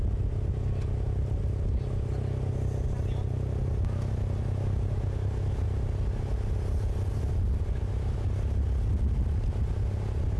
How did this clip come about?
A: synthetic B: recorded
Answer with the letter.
B